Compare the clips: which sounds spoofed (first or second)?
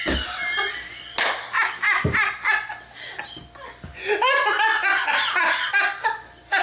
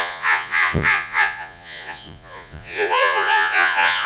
second